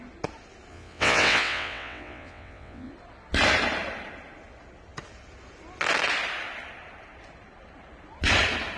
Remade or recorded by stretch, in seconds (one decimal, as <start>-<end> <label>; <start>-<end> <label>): 0.0-0.7 recorded; 0.7-2.9 remade; 2.9-8.8 recorded